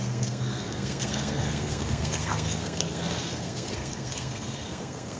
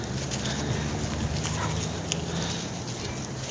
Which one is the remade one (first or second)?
first